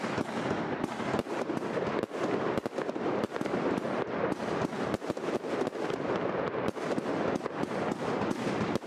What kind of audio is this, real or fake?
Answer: real